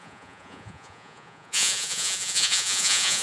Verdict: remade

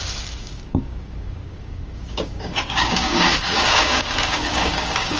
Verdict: remade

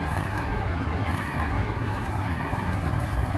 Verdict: remade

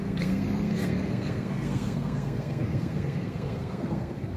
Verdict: remade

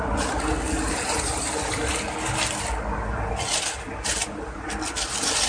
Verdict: recorded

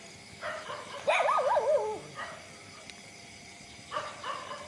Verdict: remade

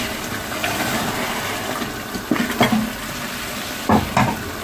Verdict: recorded